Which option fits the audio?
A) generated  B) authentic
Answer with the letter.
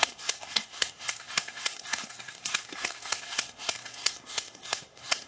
A